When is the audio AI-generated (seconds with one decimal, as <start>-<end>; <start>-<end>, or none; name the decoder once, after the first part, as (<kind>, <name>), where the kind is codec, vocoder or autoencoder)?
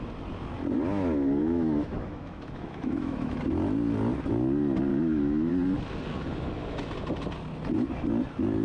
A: 1.4-3.4 (autoencoder, DAC-VAE); 4.9-5.5